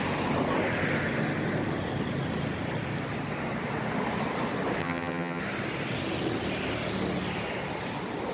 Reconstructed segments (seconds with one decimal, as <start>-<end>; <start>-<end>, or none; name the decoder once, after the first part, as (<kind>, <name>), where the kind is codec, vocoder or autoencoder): 4.8-5.4 (vocoder, HiFi-GAN)